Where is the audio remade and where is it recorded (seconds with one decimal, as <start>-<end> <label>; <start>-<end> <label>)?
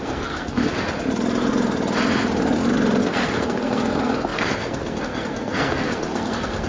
0.0-0.6 remade; 0.6-3.0 recorded; 3.0-6.7 remade